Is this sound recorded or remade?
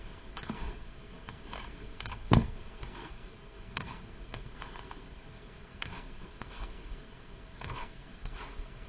remade